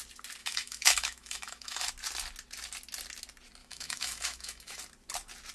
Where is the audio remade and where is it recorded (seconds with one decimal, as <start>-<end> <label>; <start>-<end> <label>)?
0.0-0.4 recorded; 0.4-1.9 remade; 1.9-3.6 recorded; 3.6-4.8 remade; 4.8-5.5 recorded